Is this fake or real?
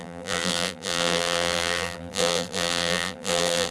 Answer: fake